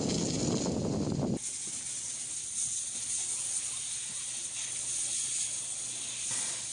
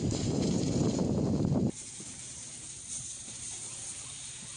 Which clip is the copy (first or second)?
second